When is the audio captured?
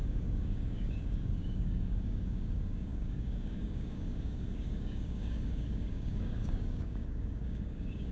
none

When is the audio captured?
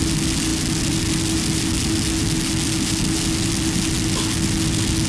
0.0-5.1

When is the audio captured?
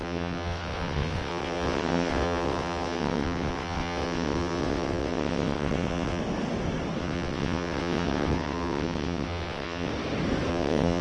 6.2-7.0; 9.9-10.5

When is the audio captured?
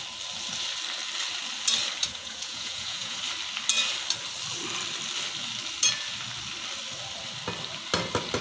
0.0-2.0; 3.2-8.4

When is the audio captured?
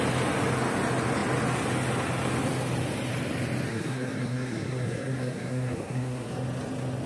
0.0-3.7; 6.3-7.1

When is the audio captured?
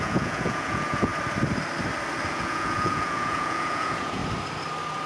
1.1-2.3; 4.2-5.1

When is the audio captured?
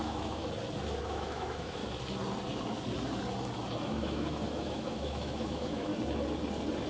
0.4-1.0; 1.8-3.8; 5.9-6.9